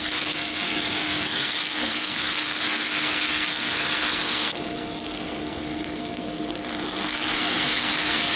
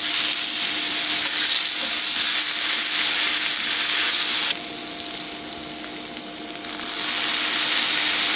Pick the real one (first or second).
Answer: second